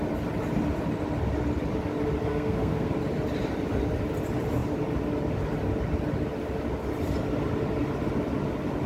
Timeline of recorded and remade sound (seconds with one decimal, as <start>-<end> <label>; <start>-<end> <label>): 0.0-2.3 recorded; 2.3-2.9 remade; 2.9-8.9 recorded